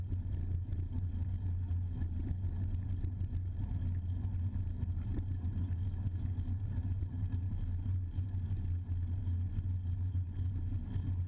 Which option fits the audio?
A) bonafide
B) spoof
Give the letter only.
A